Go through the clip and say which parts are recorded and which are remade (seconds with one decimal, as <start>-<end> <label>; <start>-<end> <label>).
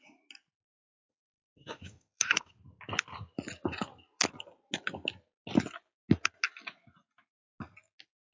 0.0-1.0 recorded; 1.0-2.5 remade; 2.5-8.3 recorded